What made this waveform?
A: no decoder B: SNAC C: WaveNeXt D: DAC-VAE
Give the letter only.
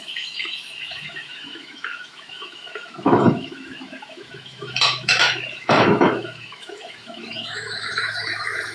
D